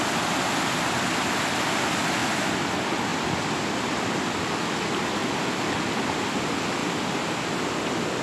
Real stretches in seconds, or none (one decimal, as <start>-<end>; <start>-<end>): 0.0-3.1; 4.0-8.2